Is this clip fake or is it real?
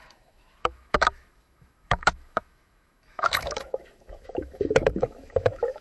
fake